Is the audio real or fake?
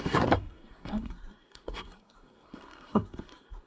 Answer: fake